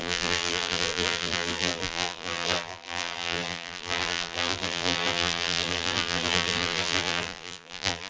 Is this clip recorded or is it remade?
remade